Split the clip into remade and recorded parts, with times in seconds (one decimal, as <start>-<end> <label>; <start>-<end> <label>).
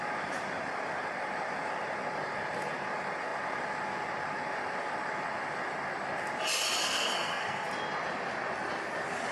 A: 0.0-6.8 recorded; 6.8-7.7 remade; 7.7-9.3 recorded